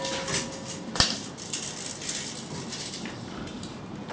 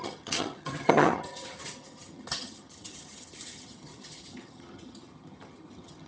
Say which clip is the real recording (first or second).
first